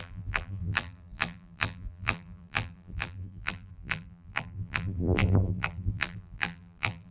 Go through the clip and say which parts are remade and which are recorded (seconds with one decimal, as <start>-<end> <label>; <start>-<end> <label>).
0.0-7.1 remade

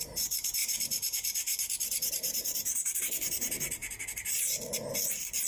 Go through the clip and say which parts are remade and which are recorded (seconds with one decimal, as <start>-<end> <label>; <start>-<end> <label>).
0.0-3.8 remade; 3.8-5.5 recorded

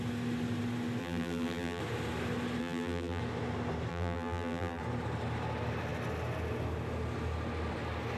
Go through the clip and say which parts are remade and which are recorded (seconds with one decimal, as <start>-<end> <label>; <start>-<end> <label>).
0.0-1.0 recorded; 1.0-1.8 remade; 1.8-2.6 recorded; 2.6-3.2 remade; 3.2-3.9 recorded; 3.9-4.8 remade; 4.8-8.2 recorded